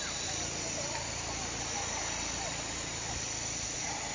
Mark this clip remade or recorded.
recorded